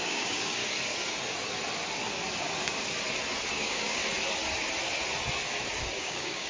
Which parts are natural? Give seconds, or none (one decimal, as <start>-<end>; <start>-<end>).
0.6-3.5; 4.0-6.0